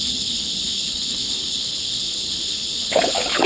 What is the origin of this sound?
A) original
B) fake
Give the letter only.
B